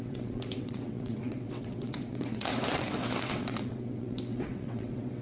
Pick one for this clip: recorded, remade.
remade